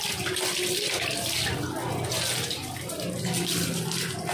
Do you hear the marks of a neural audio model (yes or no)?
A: no